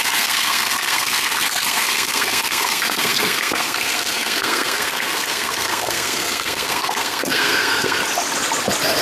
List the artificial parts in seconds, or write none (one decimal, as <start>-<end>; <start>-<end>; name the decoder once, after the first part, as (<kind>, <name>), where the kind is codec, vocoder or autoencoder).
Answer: 0.0-8.0 (codec, SNAC)